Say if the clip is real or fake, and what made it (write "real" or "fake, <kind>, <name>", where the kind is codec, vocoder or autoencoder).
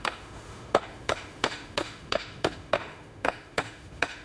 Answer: fake, autoencoder, DAC-VAE